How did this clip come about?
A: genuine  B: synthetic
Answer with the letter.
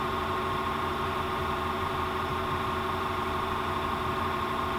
B